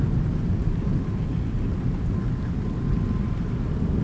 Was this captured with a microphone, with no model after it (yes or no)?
yes